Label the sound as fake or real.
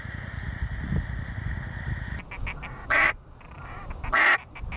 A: real